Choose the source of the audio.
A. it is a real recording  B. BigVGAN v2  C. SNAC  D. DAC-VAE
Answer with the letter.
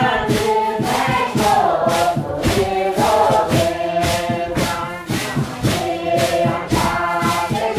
B